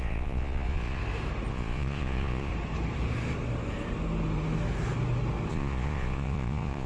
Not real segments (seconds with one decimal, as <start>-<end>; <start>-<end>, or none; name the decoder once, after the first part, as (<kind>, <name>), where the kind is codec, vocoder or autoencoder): 0.0-1.0 (vocoder, Vocos); 1.5-2.5; 5.5-6.9